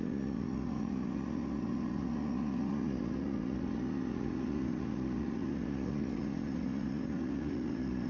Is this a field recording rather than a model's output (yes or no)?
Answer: no